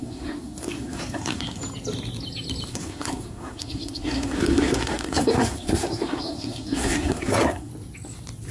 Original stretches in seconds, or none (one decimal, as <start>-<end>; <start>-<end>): 1.6-2.7; 7.7-8.5